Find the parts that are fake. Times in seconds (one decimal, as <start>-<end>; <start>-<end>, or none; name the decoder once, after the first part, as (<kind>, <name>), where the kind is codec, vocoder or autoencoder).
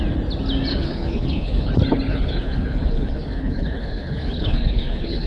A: 0.7-1.7 (codec, HILCodec); 2.1-5.3